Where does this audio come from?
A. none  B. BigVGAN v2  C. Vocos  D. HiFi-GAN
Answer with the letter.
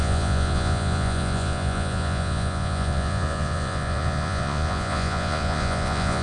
C